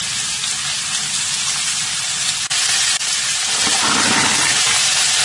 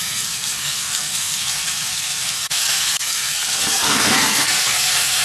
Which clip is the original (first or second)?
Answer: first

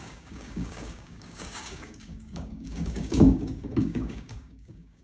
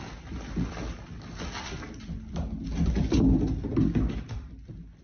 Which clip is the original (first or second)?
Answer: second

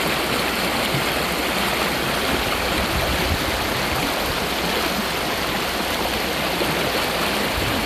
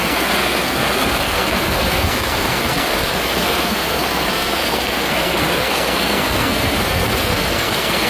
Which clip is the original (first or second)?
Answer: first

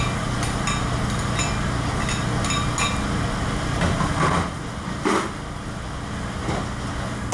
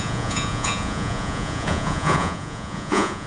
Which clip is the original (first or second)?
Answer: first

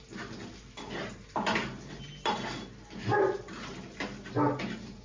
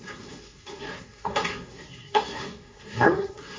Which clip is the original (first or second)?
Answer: first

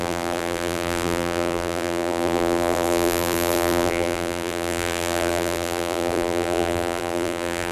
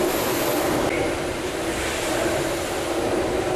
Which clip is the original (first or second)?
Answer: second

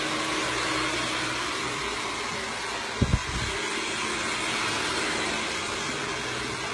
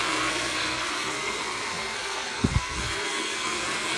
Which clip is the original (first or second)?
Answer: first